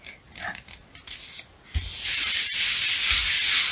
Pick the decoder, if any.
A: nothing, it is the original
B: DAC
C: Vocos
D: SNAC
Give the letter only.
A